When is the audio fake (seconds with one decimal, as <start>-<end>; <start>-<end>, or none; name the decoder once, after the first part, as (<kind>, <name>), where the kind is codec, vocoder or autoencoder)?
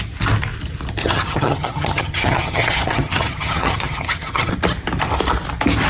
1.0-4.5 (vocoder, HiFi-GAN)